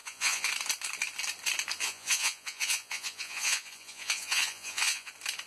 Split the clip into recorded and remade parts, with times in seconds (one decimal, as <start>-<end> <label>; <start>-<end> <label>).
0.0-0.5 remade; 0.5-1.8 recorded; 1.8-5.1 remade; 5.1-5.5 recorded